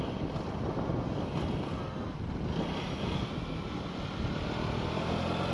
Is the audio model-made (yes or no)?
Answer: no